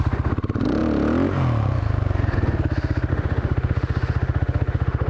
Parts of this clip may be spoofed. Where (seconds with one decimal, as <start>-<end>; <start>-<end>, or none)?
3.1-5.1